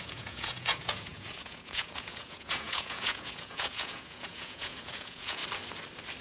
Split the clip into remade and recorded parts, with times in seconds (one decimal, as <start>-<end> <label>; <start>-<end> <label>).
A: 0.0-5.4 remade; 5.4-6.2 recorded